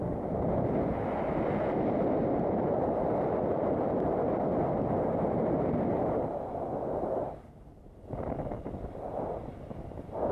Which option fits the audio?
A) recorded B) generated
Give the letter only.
A